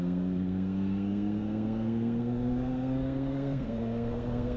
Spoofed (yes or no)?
yes